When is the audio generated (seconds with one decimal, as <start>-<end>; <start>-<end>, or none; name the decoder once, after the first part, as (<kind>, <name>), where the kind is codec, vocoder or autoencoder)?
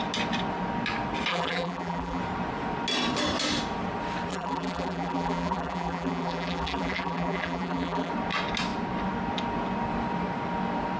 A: 1.3-2.2 (vocoder, BigVGAN v2); 4.3-8.1